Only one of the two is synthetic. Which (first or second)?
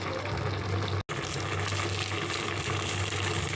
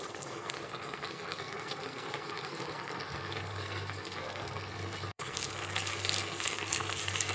second